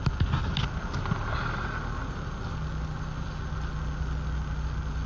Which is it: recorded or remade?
recorded